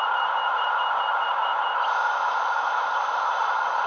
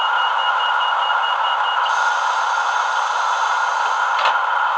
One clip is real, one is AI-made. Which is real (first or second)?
second